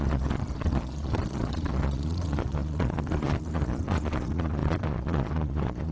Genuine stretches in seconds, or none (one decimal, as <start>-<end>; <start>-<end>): none